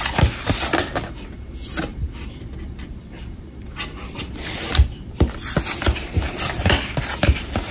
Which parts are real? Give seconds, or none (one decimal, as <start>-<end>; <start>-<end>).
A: 0.0-1.9; 6.5-7.7